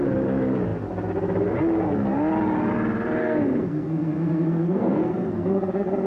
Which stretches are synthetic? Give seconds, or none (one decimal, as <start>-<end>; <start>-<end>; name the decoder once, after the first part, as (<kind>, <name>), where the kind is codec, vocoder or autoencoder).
3.2-6.1 (codec, SNAC)